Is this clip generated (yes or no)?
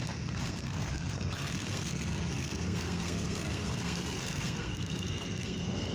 yes